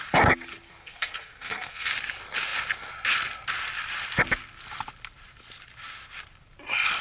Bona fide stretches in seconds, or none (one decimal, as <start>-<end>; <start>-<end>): 0.0-0.8; 1.9-7.0